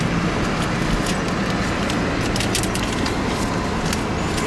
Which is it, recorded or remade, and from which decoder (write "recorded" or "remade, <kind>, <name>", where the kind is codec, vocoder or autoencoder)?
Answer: recorded